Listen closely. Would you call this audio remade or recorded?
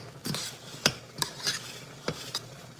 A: remade